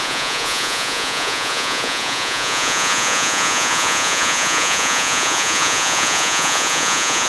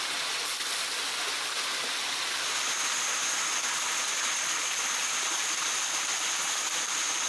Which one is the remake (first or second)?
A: first